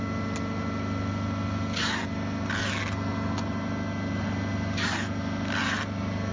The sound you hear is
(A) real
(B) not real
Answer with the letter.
A